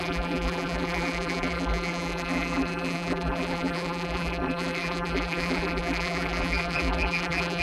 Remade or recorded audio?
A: remade